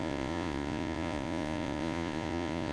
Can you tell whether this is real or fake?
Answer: fake